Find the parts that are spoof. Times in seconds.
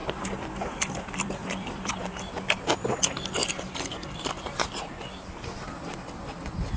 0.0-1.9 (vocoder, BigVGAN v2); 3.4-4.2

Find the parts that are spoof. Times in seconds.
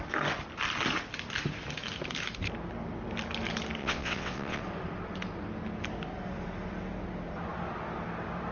3.8-4.6 (vocoder, WaveNeXt)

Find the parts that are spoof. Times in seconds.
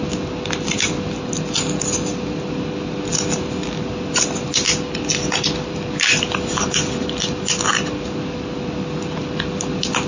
none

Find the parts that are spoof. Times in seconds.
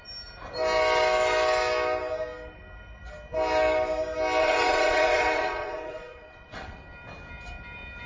4.4-6.8 (vocoder, WaveNeXt)